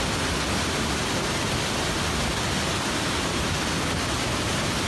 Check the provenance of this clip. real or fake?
real